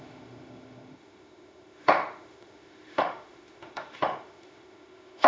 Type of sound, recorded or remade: remade